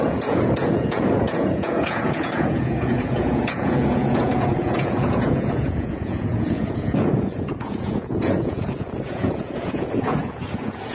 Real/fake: fake